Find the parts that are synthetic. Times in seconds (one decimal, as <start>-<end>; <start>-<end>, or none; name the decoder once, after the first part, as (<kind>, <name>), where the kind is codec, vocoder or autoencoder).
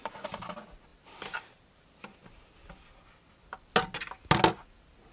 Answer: none